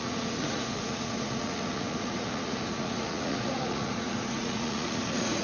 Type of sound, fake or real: fake